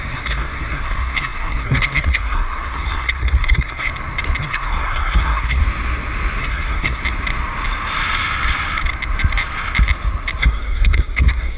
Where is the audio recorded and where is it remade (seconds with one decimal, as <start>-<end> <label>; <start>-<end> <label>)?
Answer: 0.0-3.9 remade; 3.9-4.4 recorded; 4.4-5.6 remade; 5.6-6.4 recorded; 6.4-7.0 remade; 7.0-10.4 recorded; 10.4-11.6 remade